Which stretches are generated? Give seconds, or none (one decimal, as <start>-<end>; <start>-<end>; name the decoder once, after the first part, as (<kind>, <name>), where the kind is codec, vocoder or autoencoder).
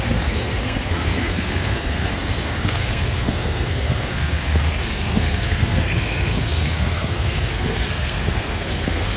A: 0.0-9.2 (codec, SNAC)